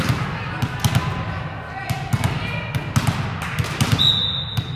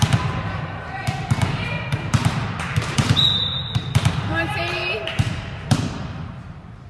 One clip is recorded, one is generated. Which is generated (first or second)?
second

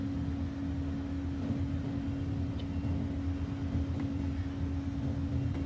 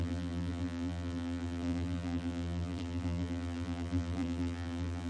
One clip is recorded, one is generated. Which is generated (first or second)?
second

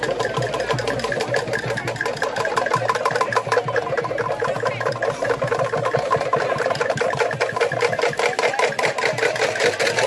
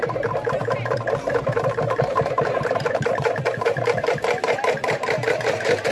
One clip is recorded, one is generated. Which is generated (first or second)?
second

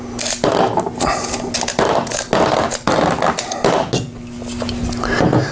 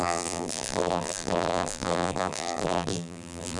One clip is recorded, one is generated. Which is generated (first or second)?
second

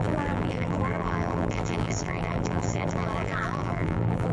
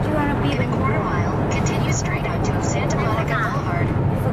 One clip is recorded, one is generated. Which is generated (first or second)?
first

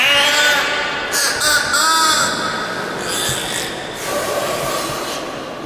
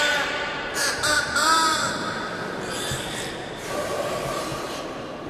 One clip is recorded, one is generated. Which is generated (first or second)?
second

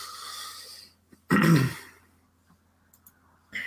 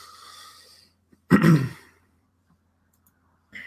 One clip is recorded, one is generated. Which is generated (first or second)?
second